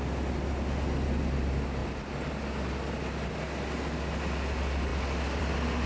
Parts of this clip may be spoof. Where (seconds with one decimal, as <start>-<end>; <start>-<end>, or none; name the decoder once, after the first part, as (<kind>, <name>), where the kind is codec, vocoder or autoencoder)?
none